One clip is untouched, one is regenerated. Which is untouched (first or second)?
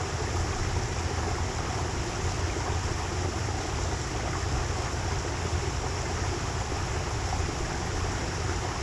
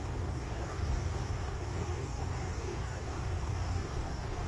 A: first